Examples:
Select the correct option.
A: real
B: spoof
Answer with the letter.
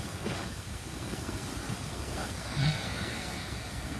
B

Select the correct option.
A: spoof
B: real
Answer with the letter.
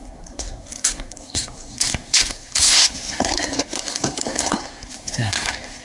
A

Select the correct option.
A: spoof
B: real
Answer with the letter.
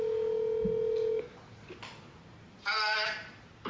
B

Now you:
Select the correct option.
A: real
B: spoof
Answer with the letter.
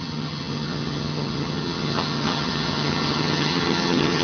B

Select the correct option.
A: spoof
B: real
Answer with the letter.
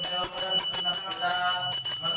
B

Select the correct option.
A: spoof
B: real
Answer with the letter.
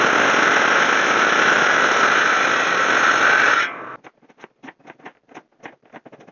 B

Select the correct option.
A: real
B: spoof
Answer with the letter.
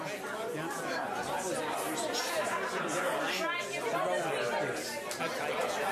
A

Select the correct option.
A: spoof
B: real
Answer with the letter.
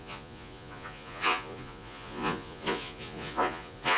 A